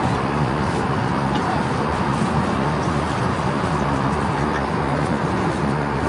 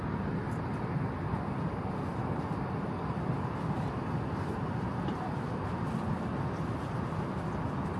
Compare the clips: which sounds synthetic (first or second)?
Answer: first